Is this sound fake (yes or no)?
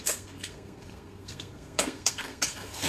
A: yes